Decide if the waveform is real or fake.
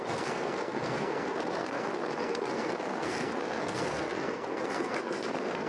fake